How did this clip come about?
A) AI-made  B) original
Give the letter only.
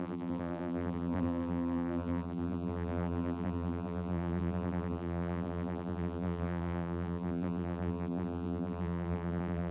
A